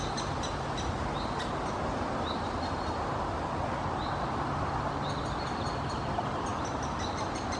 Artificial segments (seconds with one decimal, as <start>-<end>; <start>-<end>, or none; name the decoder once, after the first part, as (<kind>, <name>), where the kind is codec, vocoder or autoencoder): none

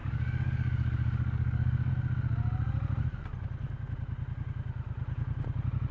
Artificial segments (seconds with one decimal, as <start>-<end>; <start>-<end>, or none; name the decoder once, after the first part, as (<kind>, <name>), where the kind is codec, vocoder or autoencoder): 0.0-1.9 (codec, DAC)

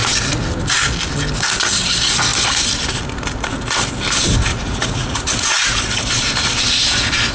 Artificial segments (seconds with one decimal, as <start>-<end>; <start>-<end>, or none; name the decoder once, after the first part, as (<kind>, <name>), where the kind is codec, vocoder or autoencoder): 4.5-5.8 (vocoder, Vocos)

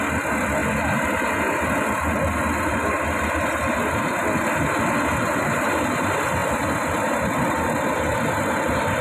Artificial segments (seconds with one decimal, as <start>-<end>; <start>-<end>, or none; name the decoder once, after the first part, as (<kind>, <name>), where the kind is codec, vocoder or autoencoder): none

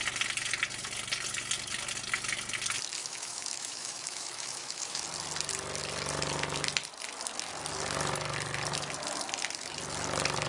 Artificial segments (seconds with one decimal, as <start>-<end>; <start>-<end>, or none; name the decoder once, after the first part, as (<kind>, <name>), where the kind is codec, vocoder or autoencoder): 3.0-5.0 (autoencoder, DAC-VAE)